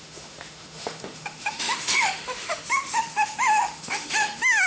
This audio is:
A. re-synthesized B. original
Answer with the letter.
A